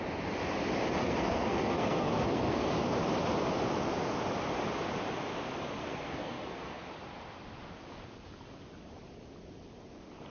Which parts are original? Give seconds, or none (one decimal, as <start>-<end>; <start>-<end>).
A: 0.0-1.0; 2.8-5.8; 6.9-10.3